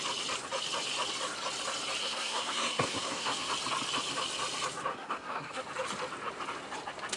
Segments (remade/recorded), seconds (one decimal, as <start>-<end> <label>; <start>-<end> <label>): 0.0-2.0 recorded; 2.0-3.5 remade; 3.5-4.9 recorded; 4.9-5.6 remade; 5.6-7.2 recorded